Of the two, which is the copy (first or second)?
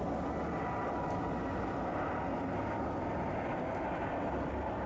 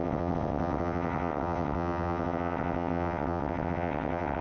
second